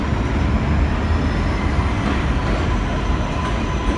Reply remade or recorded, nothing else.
recorded